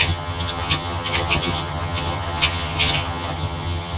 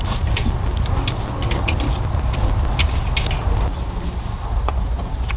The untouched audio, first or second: second